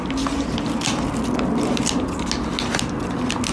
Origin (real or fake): real